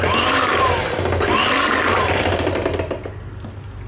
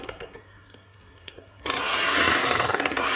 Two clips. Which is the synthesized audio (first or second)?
second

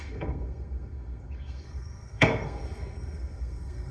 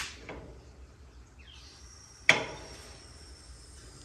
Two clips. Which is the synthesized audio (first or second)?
first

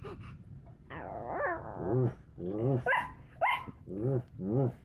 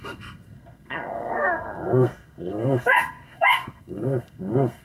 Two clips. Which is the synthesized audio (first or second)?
second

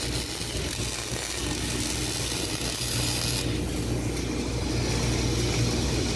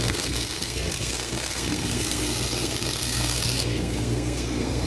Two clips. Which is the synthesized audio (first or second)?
second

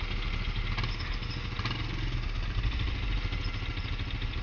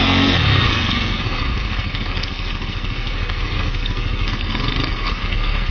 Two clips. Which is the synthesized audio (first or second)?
second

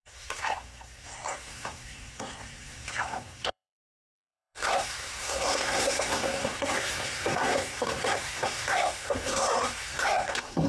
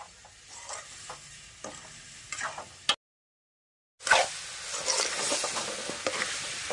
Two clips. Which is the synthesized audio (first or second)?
first